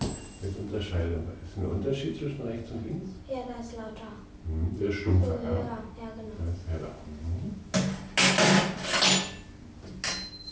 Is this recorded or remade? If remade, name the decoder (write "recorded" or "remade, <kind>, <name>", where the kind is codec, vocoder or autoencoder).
recorded